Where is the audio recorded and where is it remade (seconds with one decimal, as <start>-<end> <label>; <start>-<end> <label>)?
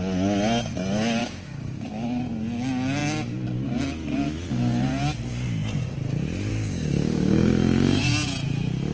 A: 0.0-1.2 recorded; 1.2-2.2 remade; 2.2-6.5 recorded; 6.5-8.0 remade; 8.0-8.9 recorded